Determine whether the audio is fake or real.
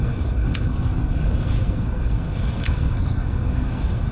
fake